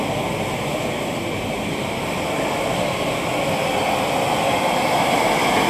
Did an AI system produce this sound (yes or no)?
yes